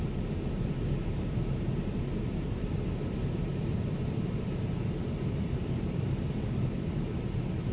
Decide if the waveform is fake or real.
fake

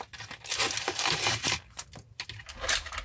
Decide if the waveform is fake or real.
real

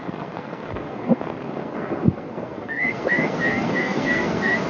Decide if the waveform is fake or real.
fake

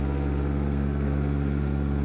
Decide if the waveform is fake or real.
fake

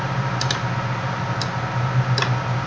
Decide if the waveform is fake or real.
real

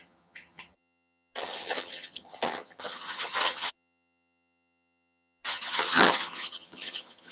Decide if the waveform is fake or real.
fake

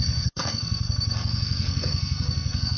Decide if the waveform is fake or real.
fake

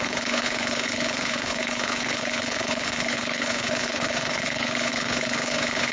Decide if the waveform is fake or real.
fake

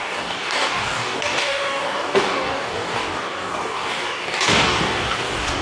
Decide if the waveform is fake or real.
fake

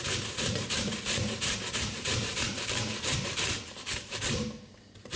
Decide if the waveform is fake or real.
fake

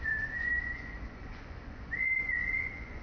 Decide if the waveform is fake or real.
fake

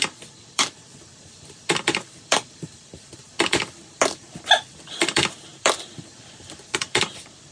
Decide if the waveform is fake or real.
fake